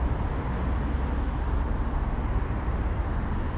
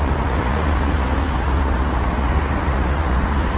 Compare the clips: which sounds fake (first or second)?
second